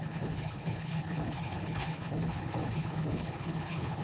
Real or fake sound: fake